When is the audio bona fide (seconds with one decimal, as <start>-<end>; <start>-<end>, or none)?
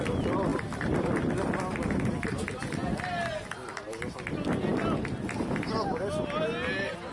0.0-7.1